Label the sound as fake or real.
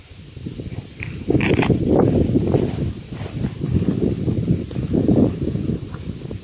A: fake